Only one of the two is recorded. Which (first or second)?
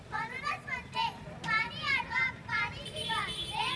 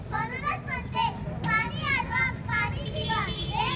second